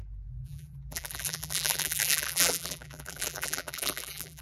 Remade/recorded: remade